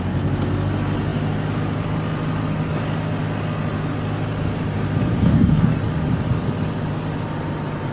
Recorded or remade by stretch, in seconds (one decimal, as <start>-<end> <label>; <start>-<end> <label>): 0.0-5.1 recorded; 5.1-5.8 remade; 5.8-7.9 recorded